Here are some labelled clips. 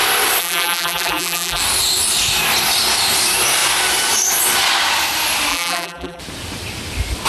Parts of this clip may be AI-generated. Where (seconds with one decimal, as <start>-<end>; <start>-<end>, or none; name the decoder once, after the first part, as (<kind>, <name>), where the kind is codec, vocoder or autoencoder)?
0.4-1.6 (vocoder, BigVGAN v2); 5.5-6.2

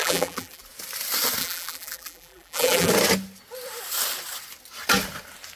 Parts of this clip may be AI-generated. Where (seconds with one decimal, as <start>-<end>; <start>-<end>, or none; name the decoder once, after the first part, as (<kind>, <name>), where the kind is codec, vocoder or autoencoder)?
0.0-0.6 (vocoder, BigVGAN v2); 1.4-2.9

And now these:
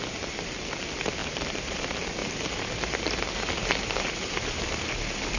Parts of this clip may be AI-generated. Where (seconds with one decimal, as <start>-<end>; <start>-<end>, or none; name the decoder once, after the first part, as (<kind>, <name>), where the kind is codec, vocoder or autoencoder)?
1.2-1.8 (vocoder, BigVGAN v2); 2.2-5.4

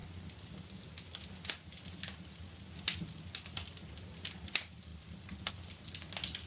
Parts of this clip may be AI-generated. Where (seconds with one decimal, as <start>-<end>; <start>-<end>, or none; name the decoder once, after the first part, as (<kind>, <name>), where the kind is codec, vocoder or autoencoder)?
none